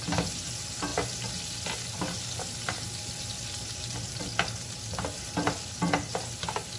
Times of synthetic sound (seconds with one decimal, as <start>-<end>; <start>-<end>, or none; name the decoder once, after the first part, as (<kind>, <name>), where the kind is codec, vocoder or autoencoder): none